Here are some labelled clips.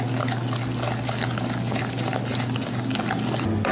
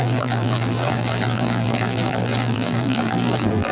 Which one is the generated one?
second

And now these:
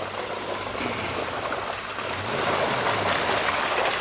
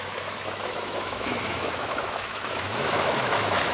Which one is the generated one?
second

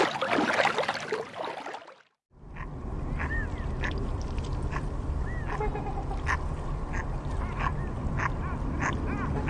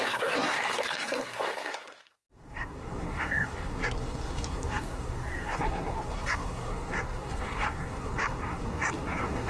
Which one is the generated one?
second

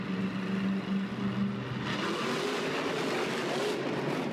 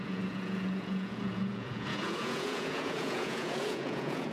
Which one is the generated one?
second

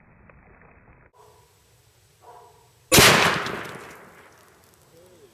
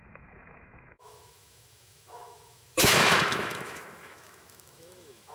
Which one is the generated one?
second